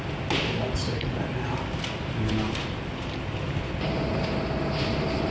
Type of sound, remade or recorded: recorded